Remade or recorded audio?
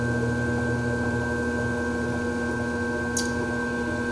recorded